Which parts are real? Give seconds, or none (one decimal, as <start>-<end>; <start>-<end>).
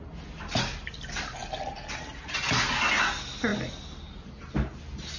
0.0-5.2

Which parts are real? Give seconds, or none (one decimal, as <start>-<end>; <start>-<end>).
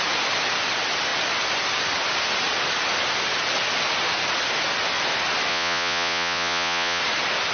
0.0-5.5; 7.0-7.5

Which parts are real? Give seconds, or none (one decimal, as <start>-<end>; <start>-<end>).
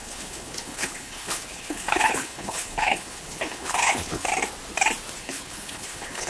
4.3-5.2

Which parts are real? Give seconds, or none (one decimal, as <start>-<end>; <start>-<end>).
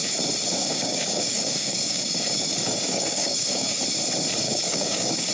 0.0-0.6; 3.8-4.4